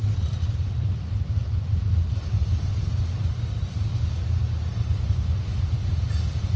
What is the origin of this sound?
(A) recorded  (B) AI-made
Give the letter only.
A